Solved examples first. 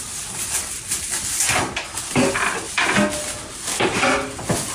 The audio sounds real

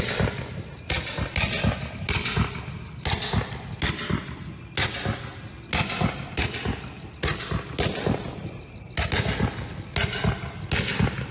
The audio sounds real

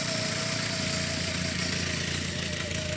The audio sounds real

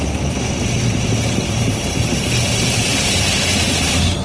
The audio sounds fake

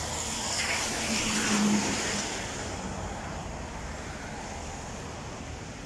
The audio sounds real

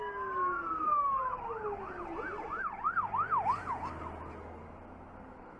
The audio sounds real